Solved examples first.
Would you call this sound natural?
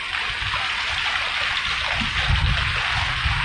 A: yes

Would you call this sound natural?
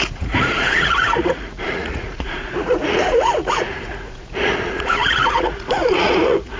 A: no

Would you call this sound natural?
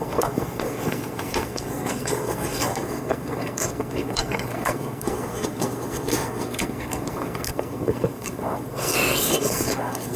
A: no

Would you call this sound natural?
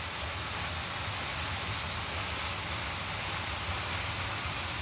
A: yes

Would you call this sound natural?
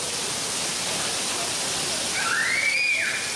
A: yes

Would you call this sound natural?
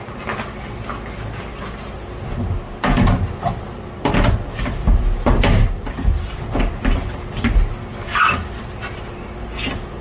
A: yes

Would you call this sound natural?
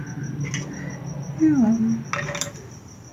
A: yes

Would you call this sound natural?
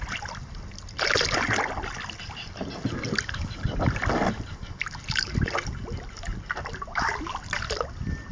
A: yes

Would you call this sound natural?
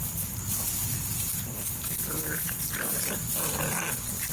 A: yes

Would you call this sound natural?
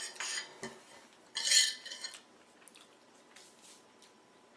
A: yes